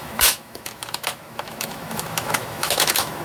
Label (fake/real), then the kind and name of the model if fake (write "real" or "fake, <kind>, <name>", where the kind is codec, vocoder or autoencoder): fake, autoencoder, DAC-VAE